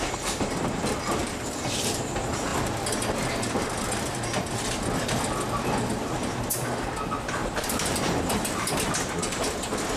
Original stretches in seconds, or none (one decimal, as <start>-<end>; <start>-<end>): 0.0-1.2; 2.0-7.4; 8.9-10.0